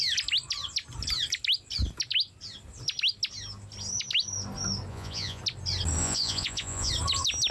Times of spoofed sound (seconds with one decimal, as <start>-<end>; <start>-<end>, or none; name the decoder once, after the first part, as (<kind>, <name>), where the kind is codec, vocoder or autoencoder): 4.9-5.4 (vocoder, Vocos); 6.0-6.9